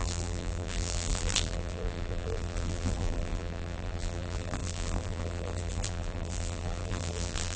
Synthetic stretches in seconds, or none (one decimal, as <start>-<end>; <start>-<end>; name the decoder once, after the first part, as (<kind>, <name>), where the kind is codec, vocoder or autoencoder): 0.0-7.6 (vocoder, BigVGAN v2)